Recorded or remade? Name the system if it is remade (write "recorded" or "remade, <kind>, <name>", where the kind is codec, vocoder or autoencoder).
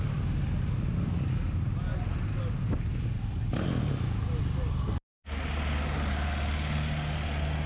recorded